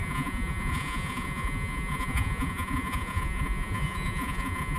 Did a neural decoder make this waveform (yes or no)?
yes